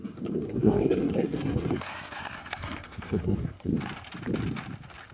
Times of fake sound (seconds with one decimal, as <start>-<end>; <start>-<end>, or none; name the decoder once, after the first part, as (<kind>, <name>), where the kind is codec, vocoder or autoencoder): 0.0-3.7 (codec, SNAC)